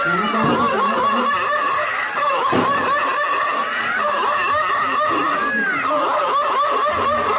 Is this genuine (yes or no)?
yes